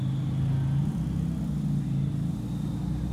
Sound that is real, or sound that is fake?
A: real